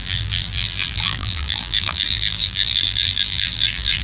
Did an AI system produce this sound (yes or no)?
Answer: yes